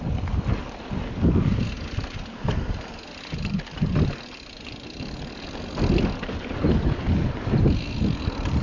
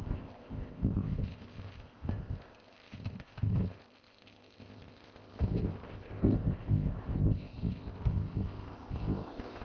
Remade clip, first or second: second